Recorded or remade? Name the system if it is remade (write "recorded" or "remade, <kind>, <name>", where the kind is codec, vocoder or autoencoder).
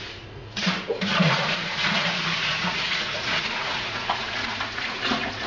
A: remade, vocoder, Vocos